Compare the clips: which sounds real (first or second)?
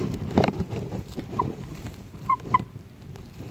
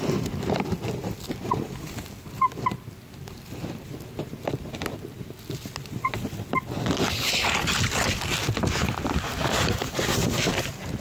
second